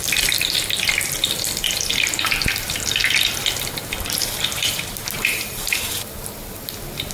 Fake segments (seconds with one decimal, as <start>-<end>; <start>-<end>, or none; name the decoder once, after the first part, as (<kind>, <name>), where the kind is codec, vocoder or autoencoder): 4.6-5.9 (vocoder, BigVGAN v2)